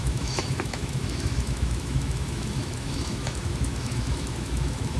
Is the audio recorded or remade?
remade